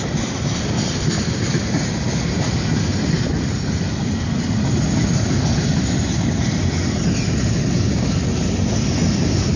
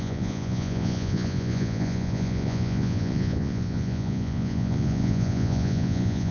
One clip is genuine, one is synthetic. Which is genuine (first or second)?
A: first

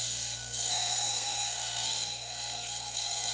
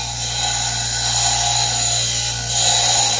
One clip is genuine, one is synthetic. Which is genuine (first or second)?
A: second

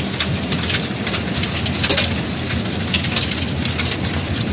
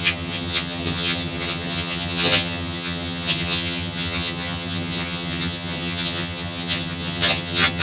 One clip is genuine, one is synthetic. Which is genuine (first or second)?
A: first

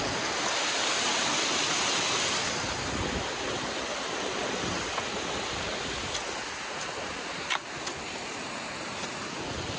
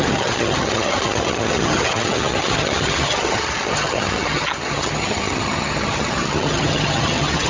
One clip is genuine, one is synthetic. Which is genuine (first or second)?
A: first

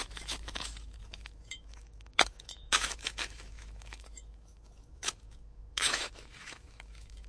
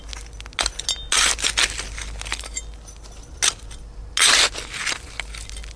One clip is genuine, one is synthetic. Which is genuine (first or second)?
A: second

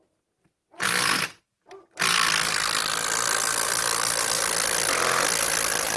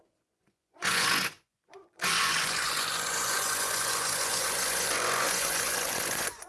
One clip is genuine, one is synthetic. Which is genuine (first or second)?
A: first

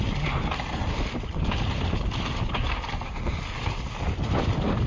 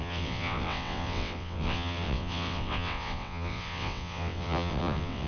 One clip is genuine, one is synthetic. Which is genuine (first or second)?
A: first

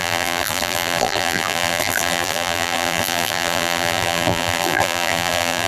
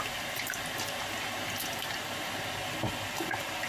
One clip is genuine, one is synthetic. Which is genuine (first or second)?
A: second